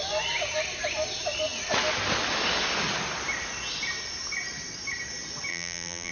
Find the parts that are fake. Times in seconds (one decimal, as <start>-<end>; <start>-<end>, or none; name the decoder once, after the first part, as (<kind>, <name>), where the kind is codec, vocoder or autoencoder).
5.5-6.1 (vocoder, BigVGAN v2)